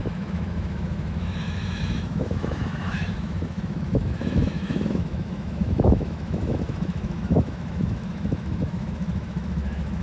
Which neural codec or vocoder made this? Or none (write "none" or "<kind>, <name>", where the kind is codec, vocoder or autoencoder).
autoencoder, DAC-VAE